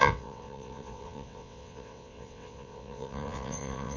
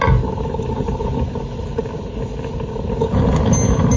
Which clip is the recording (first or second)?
second